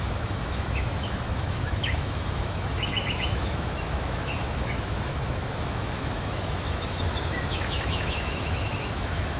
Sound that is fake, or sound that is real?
fake